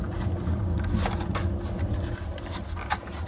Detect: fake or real real